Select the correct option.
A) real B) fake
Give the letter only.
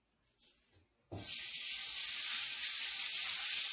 A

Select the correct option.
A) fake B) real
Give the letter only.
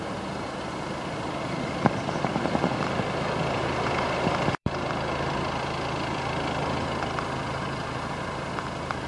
A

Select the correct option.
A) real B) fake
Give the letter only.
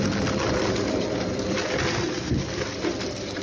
B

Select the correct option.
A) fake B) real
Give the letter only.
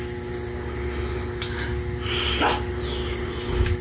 B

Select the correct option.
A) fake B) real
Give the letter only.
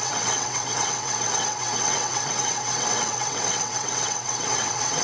A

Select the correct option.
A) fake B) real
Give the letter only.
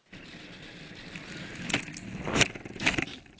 B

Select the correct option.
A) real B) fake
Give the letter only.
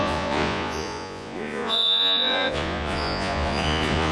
B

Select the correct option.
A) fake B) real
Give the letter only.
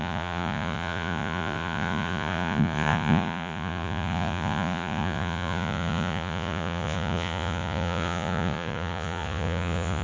A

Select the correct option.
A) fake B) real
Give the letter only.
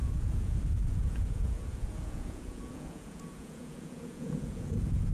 A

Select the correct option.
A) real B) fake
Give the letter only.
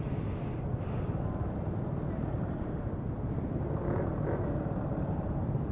A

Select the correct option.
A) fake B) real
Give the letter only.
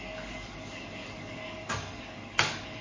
A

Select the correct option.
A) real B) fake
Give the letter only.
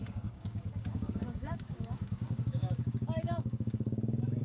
B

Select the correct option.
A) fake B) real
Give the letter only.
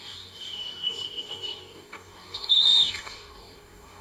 A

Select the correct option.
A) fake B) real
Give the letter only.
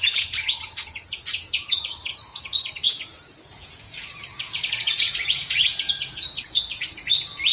A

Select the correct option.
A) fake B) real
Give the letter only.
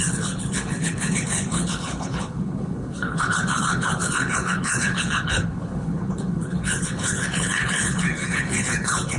A